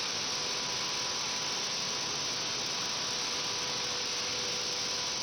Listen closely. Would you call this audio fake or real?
real